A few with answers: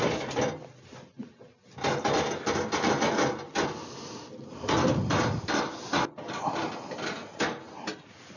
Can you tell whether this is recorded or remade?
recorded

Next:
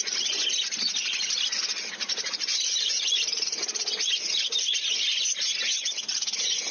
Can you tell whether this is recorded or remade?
recorded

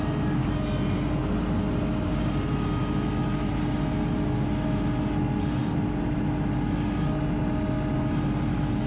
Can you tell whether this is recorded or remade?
recorded